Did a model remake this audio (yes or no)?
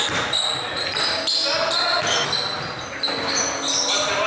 no